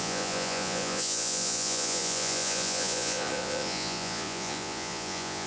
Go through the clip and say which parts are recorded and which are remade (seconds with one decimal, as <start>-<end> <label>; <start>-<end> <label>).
0.0-5.5 remade